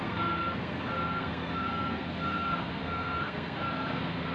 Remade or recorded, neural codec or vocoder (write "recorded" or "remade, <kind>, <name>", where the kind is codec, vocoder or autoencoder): remade, codec, SNAC